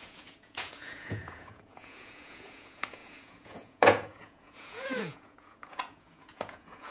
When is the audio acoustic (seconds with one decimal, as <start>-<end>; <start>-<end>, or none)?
none